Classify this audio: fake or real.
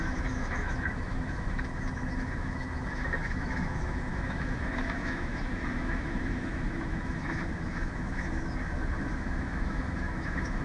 fake